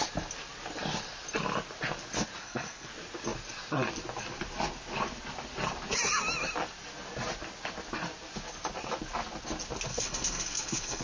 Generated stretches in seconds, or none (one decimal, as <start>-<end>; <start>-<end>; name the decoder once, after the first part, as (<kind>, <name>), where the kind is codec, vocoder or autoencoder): 2.4-2.9 (codec, SNAC); 9.9-11.0